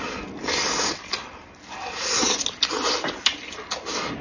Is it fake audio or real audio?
real